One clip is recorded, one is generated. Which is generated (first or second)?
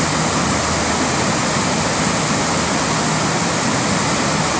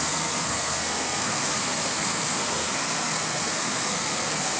second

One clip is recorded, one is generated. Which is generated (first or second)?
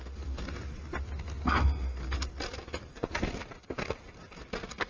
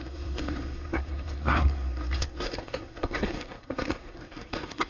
second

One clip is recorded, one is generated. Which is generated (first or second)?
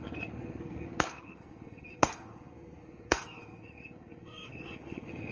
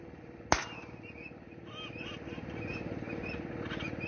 first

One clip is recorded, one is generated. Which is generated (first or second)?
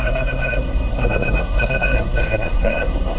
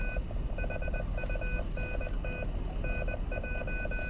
first